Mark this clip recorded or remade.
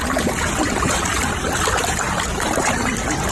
remade